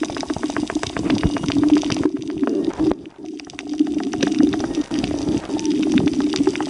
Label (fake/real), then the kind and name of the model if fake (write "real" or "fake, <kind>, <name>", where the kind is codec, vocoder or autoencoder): real